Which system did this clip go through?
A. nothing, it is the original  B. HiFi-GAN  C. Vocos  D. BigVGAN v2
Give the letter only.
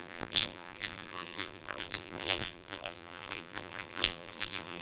D